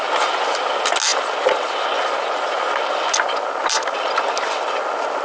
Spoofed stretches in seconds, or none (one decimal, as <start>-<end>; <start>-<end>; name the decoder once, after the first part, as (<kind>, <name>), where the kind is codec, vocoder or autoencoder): none

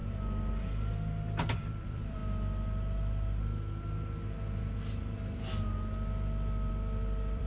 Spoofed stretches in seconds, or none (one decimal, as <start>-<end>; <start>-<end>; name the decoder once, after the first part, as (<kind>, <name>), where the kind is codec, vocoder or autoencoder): 1.6-2.2 (vocoder, BigVGAN v2); 6.7-7.5

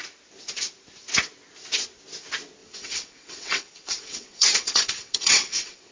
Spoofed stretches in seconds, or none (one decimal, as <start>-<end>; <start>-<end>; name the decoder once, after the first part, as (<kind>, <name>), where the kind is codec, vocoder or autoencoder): 2.6-5.9 (vocoder, WaveNeXt)

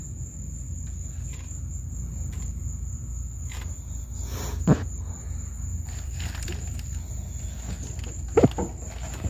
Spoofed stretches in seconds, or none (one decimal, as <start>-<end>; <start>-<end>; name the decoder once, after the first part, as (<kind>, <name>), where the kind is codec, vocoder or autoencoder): 5.7-7.1 (vocoder, BigVGAN v2)

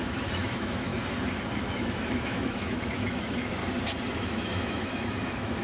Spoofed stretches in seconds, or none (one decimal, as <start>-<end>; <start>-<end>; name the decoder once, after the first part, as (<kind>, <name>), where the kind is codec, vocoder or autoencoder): 0.0-0.9 (autoencoder, DAC-VAE); 1.6-3.6; 4.1-5.6

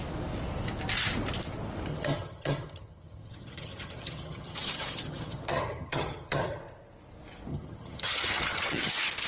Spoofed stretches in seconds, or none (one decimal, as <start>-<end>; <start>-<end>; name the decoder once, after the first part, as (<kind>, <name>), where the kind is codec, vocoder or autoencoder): 1.9-6.6 (vocoder, HiFi-GAN); 7.5-8.9

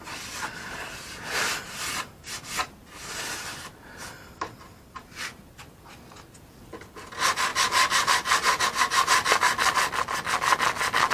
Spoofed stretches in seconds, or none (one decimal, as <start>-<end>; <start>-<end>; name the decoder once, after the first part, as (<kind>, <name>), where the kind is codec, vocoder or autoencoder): 7.5-8.6 (vocoder, BigVGAN v2)